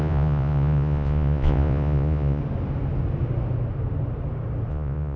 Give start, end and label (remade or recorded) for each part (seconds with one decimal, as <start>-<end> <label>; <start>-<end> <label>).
0.0-2.4 remade; 2.4-4.7 recorded; 4.7-5.2 remade